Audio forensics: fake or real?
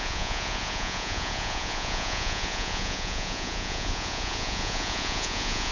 fake